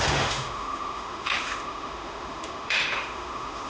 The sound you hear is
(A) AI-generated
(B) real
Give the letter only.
A